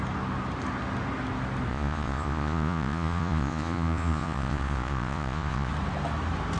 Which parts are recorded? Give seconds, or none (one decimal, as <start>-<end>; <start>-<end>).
0.0-1.7; 5.7-6.6